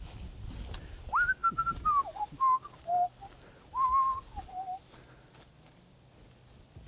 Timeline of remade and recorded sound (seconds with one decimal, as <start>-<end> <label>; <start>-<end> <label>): 0.0-6.9 recorded